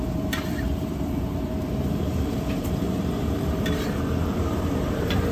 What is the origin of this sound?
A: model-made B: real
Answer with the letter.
A